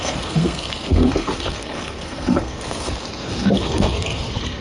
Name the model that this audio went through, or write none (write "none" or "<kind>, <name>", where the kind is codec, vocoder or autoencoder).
codec, SNAC